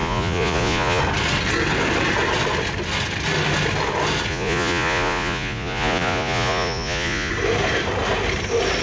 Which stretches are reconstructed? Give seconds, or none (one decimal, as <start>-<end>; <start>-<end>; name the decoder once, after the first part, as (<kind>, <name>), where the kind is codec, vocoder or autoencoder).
0.0-1.0 (vocoder, Vocos); 4.3-7.3